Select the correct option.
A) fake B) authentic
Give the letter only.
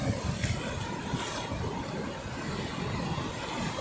B